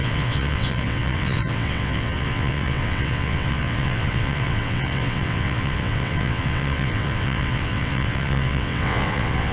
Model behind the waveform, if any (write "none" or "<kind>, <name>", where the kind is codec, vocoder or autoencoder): vocoder, WaveNeXt